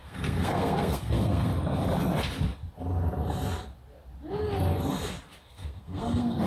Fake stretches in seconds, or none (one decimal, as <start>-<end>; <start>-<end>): 0.0-1.5; 5.4-6.5